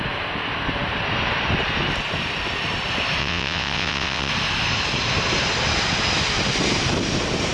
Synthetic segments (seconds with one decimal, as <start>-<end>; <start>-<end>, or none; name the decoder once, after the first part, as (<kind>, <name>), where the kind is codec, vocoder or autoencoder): 3.2-4.3 (vocoder, WaveNeXt)